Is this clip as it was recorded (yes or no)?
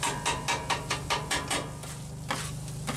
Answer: yes